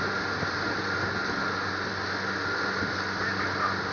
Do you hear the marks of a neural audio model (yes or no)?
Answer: no